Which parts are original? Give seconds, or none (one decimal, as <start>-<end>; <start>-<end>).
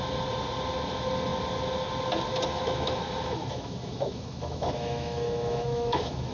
0.0-2.5